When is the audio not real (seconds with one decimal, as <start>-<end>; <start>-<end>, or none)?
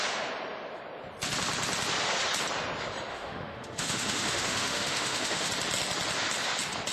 3.1-5.5